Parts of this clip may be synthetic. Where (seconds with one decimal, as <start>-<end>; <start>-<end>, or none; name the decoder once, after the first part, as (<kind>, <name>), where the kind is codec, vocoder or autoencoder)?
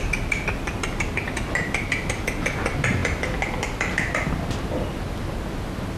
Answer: none